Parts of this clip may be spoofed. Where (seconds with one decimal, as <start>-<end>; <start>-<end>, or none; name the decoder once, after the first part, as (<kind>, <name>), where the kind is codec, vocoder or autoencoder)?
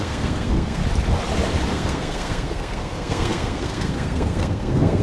0.0-0.8 (codec, SNAC); 1.7-5.0